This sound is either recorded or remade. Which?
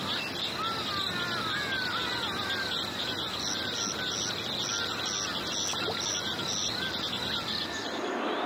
recorded